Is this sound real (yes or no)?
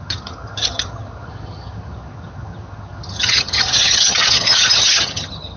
no